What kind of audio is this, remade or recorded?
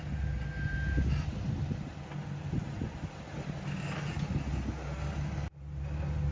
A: recorded